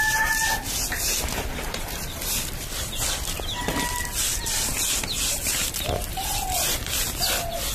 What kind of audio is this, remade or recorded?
recorded